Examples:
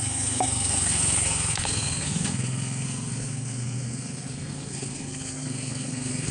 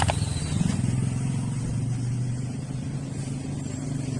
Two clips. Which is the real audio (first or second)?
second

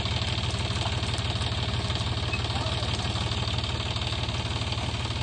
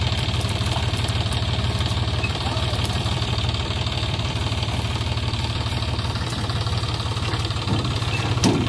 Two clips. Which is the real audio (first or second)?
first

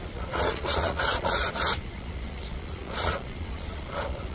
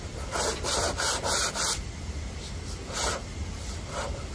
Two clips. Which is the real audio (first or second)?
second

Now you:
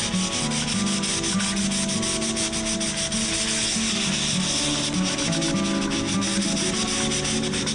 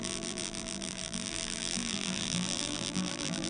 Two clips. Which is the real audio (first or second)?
first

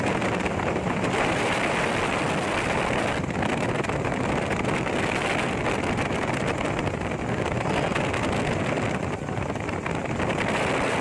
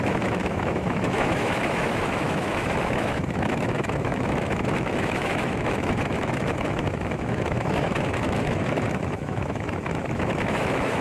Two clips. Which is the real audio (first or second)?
first